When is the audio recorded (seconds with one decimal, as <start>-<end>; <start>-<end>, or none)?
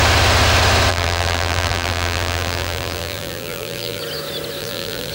0.0-0.9; 4.0-4.6